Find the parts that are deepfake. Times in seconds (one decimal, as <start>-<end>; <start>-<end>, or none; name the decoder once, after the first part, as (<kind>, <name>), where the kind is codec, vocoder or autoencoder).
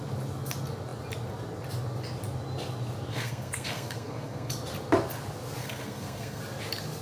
3.1-4.5 (codec, SNAC); 5.6-6.4